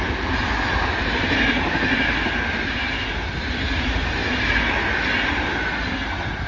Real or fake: real